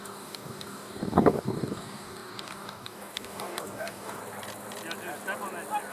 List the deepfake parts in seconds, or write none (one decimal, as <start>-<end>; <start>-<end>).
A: 0.0-4.2